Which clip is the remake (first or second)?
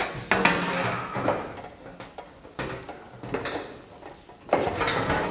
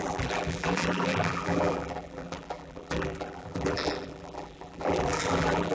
second